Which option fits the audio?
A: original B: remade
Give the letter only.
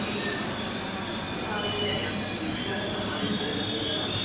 A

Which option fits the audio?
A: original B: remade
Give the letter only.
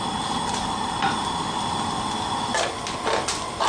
A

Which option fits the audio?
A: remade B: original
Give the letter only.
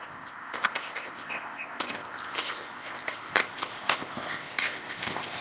A